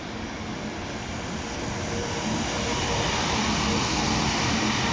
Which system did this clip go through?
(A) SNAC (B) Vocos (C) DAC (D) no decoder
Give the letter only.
D